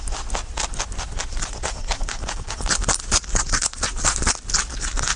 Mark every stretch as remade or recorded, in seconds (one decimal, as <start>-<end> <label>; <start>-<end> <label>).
0.0-1.8 remade; 1.8-5.2 recorded